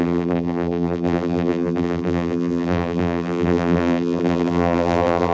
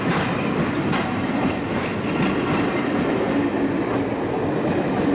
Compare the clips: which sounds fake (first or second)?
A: first